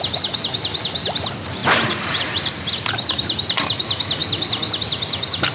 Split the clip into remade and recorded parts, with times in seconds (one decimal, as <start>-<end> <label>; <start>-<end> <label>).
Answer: 0.0-1.6 recorded; 1.6-2.5 remade; 2.5-5.5 recorded